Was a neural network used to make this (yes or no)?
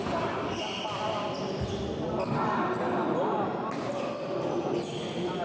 no